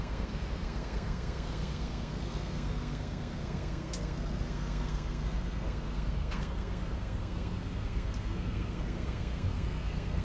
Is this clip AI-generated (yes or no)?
yes